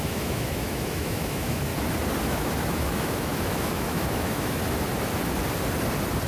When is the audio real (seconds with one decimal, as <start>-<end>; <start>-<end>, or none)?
1.7-2.2; 4.6-6.3